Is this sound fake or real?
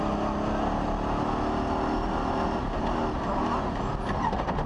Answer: real